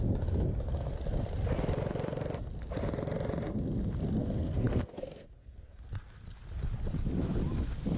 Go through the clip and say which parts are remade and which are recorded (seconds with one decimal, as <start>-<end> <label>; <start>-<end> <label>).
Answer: 0.0-4.2 recorded; 4.2-5.8 remade; 5.8-8.0 recorded